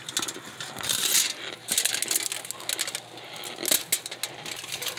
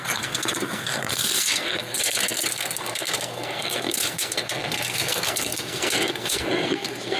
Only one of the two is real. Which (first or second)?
first